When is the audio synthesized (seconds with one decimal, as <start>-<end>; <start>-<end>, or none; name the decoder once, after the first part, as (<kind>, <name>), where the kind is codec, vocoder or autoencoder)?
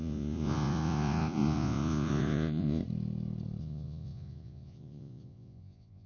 0.0-2.8 (vocoder, Vocos); 3.6-6.1